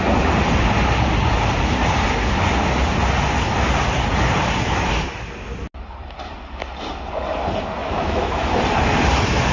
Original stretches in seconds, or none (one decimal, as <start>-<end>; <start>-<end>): 0.0-7.8; 8.5-9.5